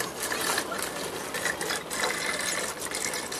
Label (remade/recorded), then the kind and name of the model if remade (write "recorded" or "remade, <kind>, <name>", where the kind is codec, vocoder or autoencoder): recorded